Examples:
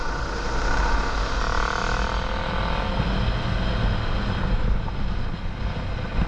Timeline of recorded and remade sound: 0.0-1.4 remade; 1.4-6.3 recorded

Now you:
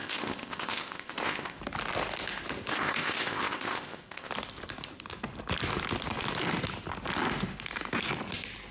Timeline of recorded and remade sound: 0.0-1.6 remade; 1.6-2.7 recorded; 2.7-4.3 remade; 4.3-8.7 recorded

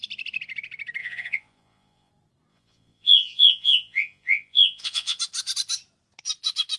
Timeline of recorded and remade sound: 0.0-1.0 recorded; 1.0-2.1 remade; 2.1-2.5 recorded; 2.5-5.2 remade; 5.2-6.8 recorded

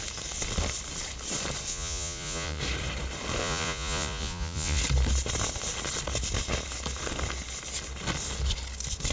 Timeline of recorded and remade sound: 0.0-1.7 recorded; 1.7-2.6 remade; 2.6-3.4 recorded; 3.4-4.8 remade; 4.8-9.1 recorded